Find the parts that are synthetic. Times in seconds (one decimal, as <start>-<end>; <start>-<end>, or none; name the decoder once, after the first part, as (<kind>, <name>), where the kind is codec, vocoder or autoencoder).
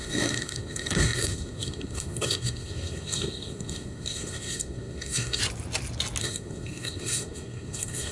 0.0-5.4 (codec, SNAC); 6.2-8.1